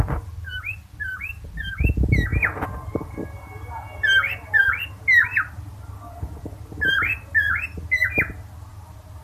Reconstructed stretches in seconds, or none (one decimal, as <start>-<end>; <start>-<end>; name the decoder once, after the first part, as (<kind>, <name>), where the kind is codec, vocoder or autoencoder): none

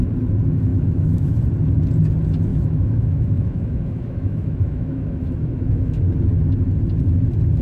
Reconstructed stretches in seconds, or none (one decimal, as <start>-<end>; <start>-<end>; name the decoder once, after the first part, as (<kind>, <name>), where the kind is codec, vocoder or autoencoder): 0.7-1.4 (autoencoder, DAC-VAE); 2.5-6.0